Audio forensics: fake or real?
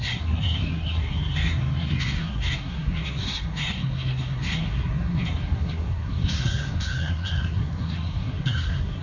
fake